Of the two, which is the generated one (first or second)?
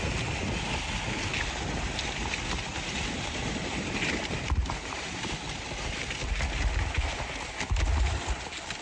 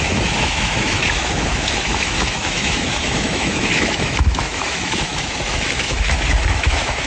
second